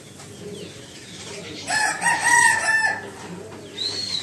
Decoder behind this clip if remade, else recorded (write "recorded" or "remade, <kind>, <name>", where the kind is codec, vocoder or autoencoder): recorded